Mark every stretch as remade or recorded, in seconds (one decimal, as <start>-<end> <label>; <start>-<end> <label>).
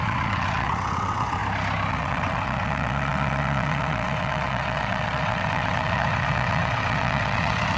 0.0-1.4 remade; 1.4-1.9 recorded; 1.9-7.8 remade